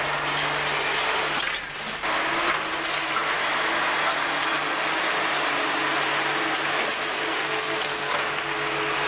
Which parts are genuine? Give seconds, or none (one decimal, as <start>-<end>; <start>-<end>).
0.0-7.3; 8.1-9.1